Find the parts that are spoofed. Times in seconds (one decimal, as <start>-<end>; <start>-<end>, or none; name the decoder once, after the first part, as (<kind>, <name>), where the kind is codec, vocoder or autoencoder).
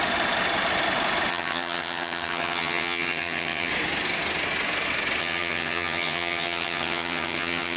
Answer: 1.3-3.7 (vocoder, HiFi-GAN); 5.2-7.8